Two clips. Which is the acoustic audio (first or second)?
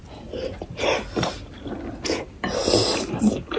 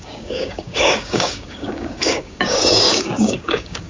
first